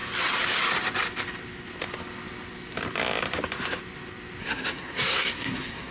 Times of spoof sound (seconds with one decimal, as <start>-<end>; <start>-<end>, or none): 4.4-5.9